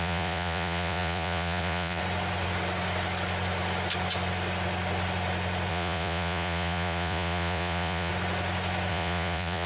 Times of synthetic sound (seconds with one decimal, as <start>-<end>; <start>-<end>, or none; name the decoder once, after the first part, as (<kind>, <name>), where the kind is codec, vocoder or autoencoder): 0.0-2.0 (vocoder, Vocos); 5.7-8.1; 8.9-9.7